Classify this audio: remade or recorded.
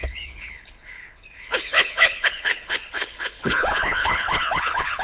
remade